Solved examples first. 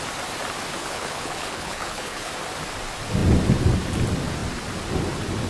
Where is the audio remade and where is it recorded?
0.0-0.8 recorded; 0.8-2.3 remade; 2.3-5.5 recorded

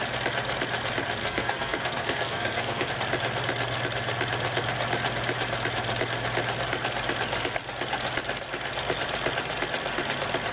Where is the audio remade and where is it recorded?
0.0-1.2 recorded; 1.2-2.9 remade; 2.9-10.5 recorded

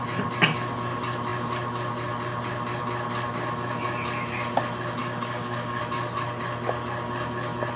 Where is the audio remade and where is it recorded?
0.0-5.0 recorded; 5.0-5.8 remade; 5.8-7.8 recorded

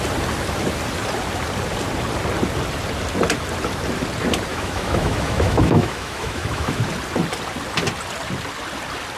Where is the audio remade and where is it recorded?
0.0-4.5 recorded; 4.5-6.8 remade; 6.8-9.2 recorded

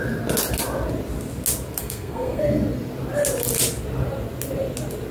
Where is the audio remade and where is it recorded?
0.0-1.8 recorded; 1.8-2.4 remade; 2.4-5.1 recorded

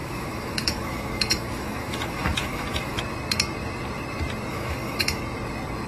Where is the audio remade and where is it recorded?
0.0-3.0 remade; 3.0-4.5 recorded; 4.5-5.2 remade; 5.2-5.9 recorded

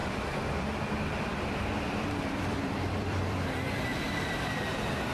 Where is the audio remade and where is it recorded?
0.0-0.8 remade; 0.8-1.3 recorded; 1.3-4.4 remade; 4.4-5.1 recorded

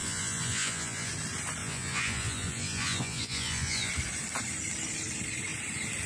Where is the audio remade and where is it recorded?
0.0-1.1 remade; 1.1-1.6 recorded; 1.6-3.9 remade; 3.9-6.1 recorded